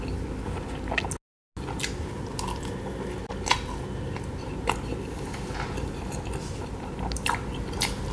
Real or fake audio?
real